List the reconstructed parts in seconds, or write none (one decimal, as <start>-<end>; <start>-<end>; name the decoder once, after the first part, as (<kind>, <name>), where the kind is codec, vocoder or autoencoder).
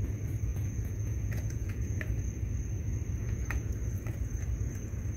0.5-2.0 (vocoder, Vocos); 3.2-3.7